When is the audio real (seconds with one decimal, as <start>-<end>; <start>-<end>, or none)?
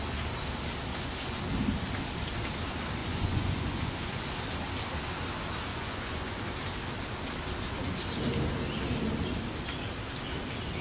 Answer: 0.0-0.9; 1.4-3.0; 4.3-5.7; 6.4-10.8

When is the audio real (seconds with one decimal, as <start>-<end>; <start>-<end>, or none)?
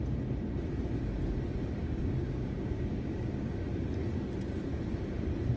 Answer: 0.0-1.8; 3.6-5.6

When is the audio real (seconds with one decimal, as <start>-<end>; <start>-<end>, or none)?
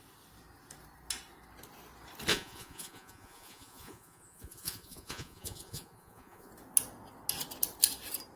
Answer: 0.0-2.3; 6.5-8.4